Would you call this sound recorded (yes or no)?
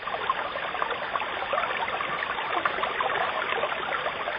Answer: yes